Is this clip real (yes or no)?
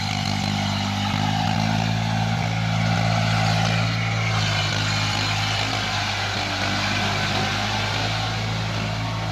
yes